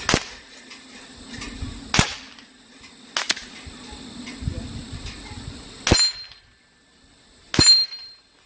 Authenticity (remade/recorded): recorded